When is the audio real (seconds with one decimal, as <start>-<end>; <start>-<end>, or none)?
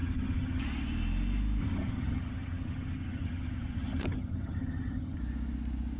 0.6-1.6; 5.2-6.0